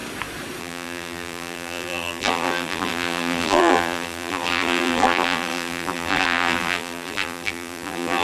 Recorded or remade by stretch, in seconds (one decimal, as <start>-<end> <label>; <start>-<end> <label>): 0.0-0.6 recorded; 0.6-8.2 remade